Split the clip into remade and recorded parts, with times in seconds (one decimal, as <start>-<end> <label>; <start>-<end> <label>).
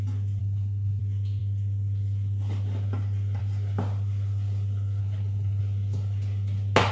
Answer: 0.0-0.4 recorded; 0.4-1.0 remade; 1.0-5.0 recorded; 5.0-5.6 remade; 5.6-6.9 recorded